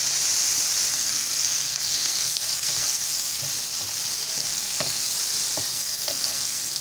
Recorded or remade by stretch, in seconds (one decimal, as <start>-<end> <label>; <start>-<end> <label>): 0.0-0.9 recorded; 0.9-3.4 remade; 3.4-4.4 recorded; 4.4-5.1 remade; 5.1-5.7 recorded; 5.7-6.8 remade